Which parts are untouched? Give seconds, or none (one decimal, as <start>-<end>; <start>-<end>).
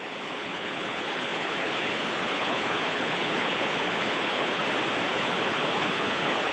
4.6-5.1